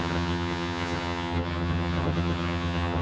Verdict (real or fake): fake